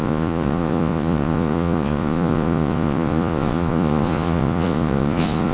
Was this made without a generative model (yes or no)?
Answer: no